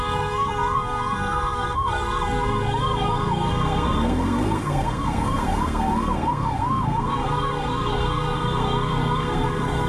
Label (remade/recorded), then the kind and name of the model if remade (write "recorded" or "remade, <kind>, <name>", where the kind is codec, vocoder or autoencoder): remade, codec, SNAC